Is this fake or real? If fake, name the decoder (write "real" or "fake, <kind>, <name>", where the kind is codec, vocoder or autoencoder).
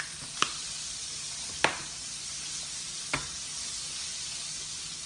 real